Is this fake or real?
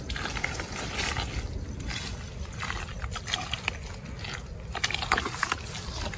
real